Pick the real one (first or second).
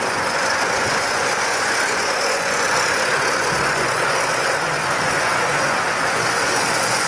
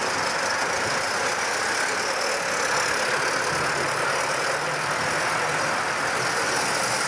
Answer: second